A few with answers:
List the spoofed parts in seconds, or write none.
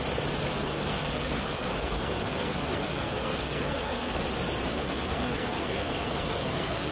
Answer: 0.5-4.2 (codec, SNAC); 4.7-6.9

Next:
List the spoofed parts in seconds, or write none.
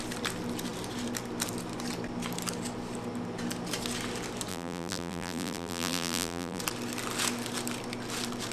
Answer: 4.5-6.6 (vocoder, BigVGAN v2)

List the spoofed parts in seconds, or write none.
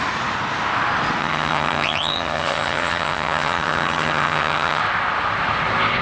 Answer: 1.2-4.8 (vocoder, HiFi-GAN)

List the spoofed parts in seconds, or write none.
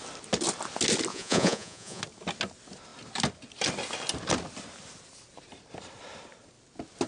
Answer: 1.1-2.0 (vocoder, Vocos)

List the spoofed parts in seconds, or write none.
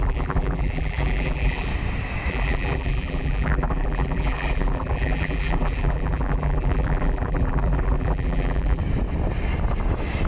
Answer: 0.0-1.7 (vocoder, BigVGAN v2); 2.3-8.8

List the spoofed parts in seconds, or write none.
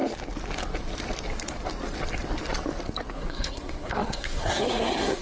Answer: 3.1-5.2 (codec, SNAC)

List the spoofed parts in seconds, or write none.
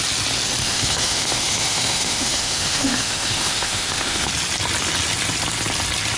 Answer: 0.6-4.3 (autoencoder, DAC-VAE)